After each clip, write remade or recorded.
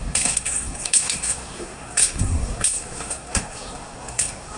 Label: remade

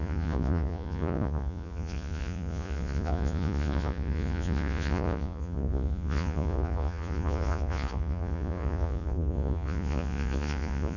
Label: remade